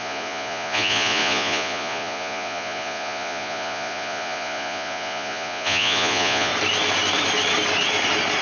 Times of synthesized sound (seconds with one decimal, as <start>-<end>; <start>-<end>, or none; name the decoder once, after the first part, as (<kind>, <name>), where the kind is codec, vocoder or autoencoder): 0.0-6.5 (vocoder, Vocos)